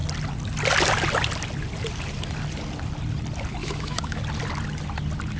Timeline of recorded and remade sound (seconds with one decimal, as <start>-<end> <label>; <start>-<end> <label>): 0.0-3.6 recorded; 3.6-4.2 remade; 4.2-5.4 recorded